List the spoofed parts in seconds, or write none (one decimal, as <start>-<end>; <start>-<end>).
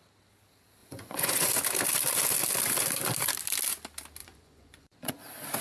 0.8-1.5; 4.2-5.1